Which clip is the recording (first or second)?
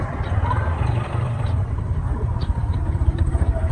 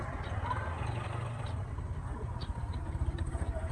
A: second